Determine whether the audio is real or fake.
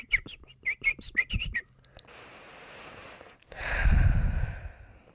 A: real